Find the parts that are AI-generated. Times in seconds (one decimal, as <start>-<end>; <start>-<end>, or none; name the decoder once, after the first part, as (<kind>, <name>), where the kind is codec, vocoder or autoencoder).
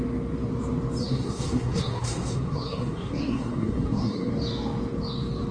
1.0-4.3 (codec, SNAC)